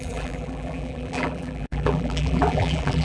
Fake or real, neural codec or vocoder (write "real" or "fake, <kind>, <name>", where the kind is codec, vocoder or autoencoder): fake, vocoder, BigVGAN v2